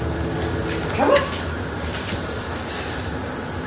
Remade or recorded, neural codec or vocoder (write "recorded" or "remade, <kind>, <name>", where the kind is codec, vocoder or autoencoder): recorded